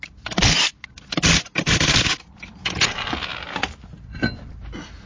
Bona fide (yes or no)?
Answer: yes